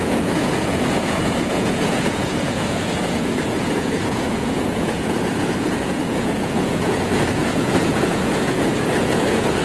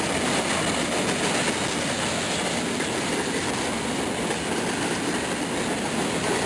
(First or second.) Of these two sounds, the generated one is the first